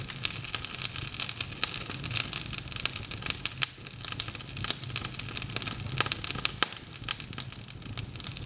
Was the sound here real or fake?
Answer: real